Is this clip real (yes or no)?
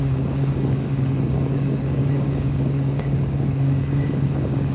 no